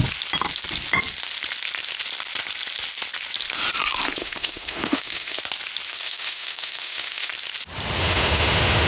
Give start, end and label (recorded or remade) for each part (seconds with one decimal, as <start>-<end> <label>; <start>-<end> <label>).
0.0-4.2 recorded; 4.2-5.4 remade; 5.4-5.9 recorded; 5.9-7.3 remade; 7.3-8.0 recorded; 8.0-8.9 remade